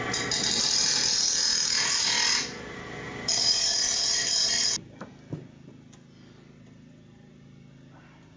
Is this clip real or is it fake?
real